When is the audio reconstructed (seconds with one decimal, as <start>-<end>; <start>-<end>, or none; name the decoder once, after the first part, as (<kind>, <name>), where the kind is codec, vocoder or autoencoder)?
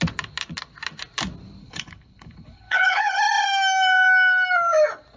1.6-3.2 (codec, HILCodec)